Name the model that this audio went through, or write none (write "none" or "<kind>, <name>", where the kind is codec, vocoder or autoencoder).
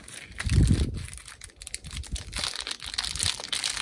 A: none